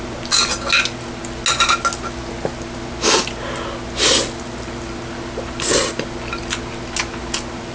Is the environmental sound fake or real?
real